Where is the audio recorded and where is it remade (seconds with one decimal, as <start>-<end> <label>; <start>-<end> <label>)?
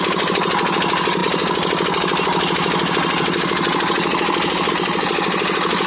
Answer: 0.0-5.9 recorded